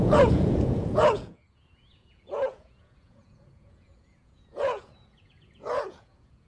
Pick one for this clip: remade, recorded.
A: remade